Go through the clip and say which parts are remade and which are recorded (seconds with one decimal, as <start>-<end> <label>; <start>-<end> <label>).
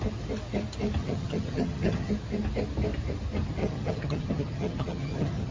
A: 0.0-1.0 recorded; 1.0-2.1 remade; 2.1-3.6 recorded; 3.6-5.5 remade